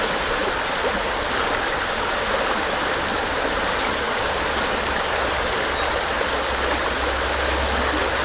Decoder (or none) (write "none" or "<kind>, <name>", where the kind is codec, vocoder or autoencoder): none